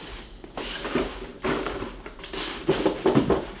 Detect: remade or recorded recorded